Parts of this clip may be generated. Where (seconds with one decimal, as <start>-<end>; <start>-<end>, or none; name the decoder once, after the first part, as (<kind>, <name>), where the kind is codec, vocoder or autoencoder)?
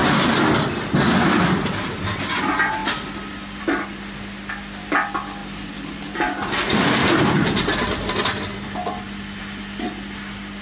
0.0-1.6 (vocoder, BigVGAN v2); 5.4-9.4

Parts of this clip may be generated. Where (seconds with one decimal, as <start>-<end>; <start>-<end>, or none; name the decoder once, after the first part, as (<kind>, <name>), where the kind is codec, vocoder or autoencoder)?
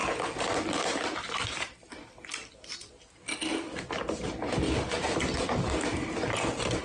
none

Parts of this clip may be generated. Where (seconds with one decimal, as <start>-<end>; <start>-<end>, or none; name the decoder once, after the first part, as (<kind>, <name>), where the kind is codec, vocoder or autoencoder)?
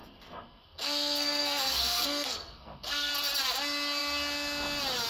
0.0-3.1 (codec, SNAC)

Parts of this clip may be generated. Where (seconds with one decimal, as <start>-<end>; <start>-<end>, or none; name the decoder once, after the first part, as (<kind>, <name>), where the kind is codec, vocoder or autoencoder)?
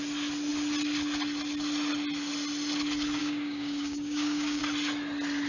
3.2-4.6 (codec, DAC)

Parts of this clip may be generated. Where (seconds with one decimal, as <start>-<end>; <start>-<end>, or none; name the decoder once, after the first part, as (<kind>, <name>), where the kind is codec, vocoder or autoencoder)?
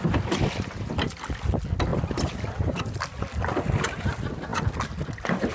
none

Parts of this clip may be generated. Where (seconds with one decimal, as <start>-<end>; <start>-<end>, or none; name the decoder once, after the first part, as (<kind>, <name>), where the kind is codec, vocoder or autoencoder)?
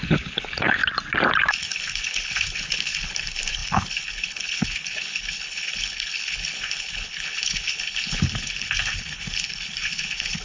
0.0-0.8 (codec, HILCodec); 1.5-10.4